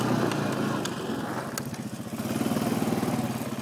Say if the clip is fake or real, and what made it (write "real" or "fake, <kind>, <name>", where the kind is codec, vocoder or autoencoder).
real